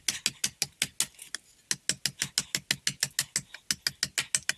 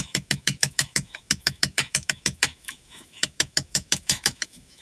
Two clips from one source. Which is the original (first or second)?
first